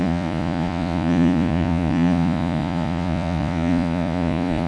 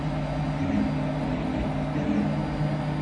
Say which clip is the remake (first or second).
first